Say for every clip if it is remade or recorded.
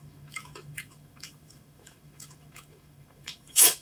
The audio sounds remade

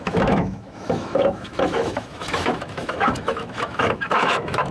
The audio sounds remade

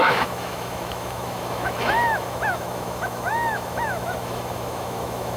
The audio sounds remade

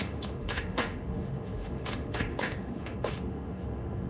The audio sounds remade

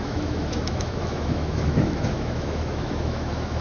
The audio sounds remade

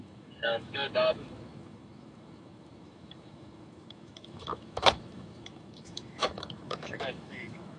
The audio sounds remade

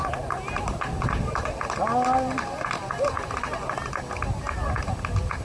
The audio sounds recorded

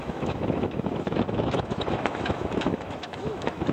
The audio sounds remade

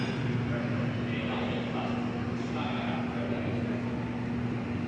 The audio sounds recorded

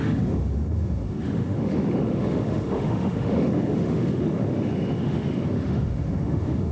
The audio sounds remade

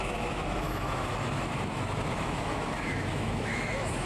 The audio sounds remade